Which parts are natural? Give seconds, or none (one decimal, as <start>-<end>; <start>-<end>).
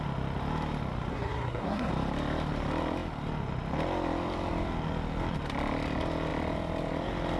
0.0-1.1; 1.9-7.4